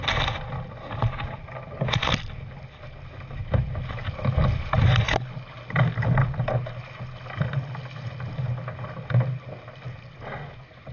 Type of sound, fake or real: real